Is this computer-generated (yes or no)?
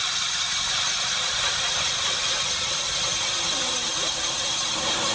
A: yes